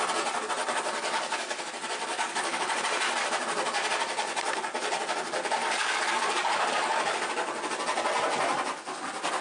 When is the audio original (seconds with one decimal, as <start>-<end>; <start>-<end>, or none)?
0.0-0.6; 1.7-2.1; 2.8-5.6; 7.3-9.4